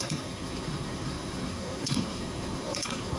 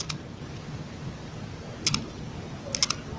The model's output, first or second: first